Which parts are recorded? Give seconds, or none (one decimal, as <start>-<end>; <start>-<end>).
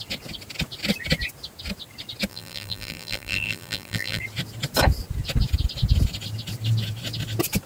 0.0-2.3; 4.2-7.7